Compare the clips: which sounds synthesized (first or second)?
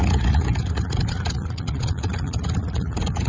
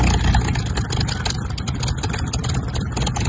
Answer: first